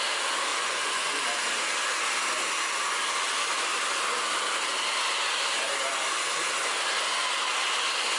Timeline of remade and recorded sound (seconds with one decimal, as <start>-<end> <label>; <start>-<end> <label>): 0.0-0.5 recorded; 0.5-1.2 remade; 1.2-8.2 recorded